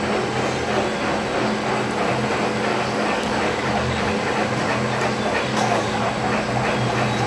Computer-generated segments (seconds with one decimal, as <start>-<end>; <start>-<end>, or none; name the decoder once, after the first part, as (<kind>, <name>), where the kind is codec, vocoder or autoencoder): 2.7-4.1 (codec, DAC); 5.5-6.1